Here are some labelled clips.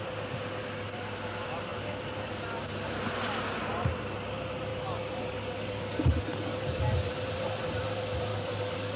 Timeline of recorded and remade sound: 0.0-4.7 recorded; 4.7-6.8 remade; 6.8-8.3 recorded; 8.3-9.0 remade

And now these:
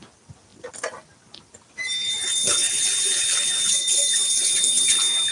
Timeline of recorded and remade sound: 0.0-5.3 recorded